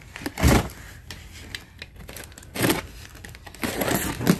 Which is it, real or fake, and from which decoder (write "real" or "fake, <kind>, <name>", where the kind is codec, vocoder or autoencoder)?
real